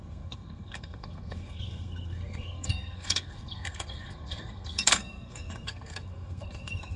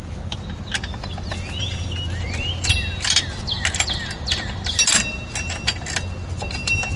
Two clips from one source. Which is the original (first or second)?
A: second